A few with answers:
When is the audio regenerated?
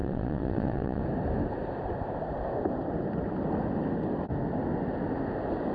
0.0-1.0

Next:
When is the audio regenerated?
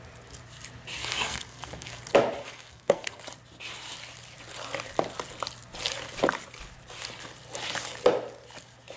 1.0-2.0; 2.4-3.2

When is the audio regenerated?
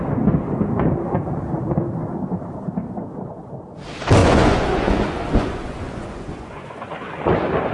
4.2-7.3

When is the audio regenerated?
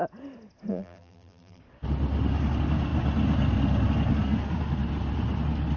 0.7-1.6